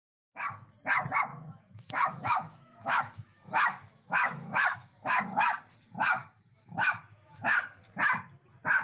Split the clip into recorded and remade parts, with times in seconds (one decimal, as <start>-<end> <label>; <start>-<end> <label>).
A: 0.0-1.3 recorded; 1.3-5.2 remade; 5.2-6.2 recorded; 6.2-7.8 remade; 7.8-8.8 recorded